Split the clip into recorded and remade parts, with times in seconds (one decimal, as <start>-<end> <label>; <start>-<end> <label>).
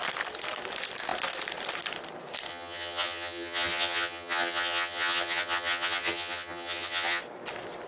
0.0-2.5 recorded; 2.5-7.2 remade; 7.2-7.9 recorded